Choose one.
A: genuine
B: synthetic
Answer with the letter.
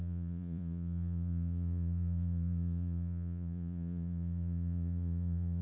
B